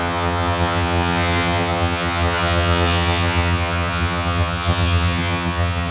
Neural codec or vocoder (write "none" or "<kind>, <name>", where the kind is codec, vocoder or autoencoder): vocoder, HiFi-GAN